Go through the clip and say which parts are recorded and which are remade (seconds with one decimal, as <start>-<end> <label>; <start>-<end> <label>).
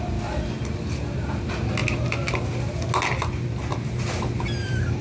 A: 0.0-5.0 recorded